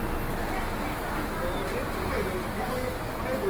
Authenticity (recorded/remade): recorded